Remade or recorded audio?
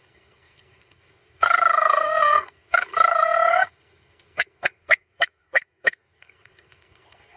remade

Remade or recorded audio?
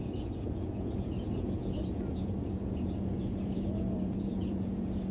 remade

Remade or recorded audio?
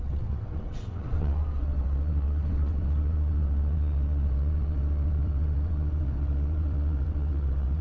remade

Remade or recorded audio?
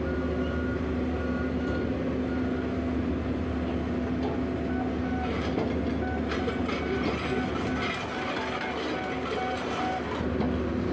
recorded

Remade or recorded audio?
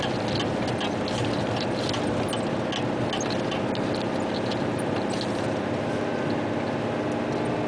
recorded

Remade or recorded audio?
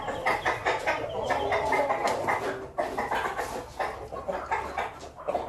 recorded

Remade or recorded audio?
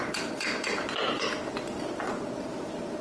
remade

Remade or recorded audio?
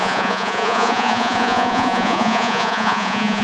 remade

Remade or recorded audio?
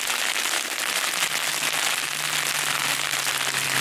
recorded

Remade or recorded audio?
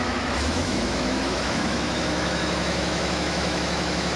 remade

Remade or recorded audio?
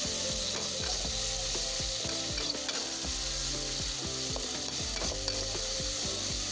recorded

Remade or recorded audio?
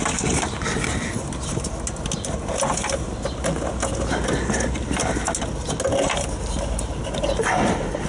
recorded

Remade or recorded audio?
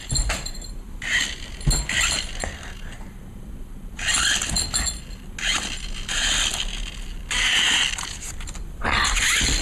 recorded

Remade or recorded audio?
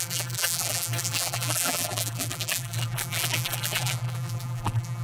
remade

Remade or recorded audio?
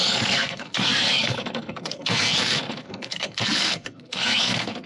remade